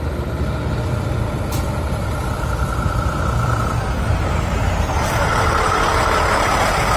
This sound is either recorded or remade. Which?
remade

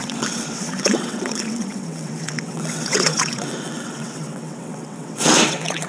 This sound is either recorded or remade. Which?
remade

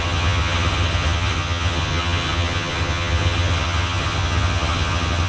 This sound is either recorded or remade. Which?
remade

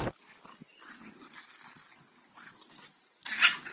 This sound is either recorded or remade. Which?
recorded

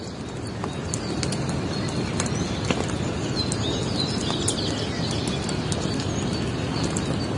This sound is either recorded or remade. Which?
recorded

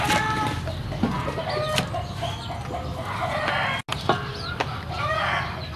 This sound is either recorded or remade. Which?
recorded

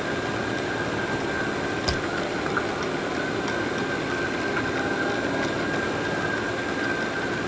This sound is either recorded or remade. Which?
recorded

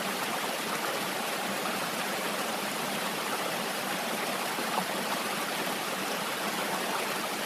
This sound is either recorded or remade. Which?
recorded